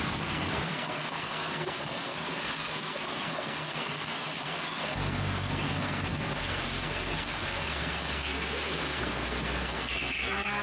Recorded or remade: remade